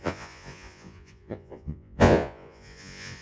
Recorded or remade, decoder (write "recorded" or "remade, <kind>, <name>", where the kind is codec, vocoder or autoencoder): remade, vocoder, Vocos